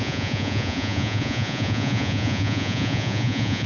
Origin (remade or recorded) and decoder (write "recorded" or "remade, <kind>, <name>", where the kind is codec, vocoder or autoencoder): remade, vocoder, Vocos